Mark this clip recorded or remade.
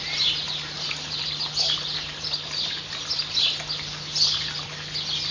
recorded